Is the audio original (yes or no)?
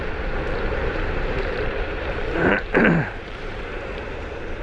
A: no